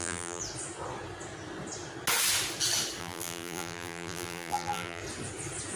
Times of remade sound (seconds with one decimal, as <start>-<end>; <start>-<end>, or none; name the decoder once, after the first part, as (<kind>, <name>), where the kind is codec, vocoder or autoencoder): 0.0-0.4 (vocoder, BigVGAN v2); 3.0-5.0